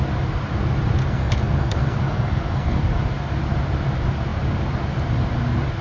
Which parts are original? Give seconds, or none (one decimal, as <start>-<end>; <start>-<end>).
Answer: 0.0-1.0; 2.8-5.8